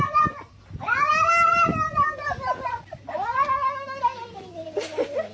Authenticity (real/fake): real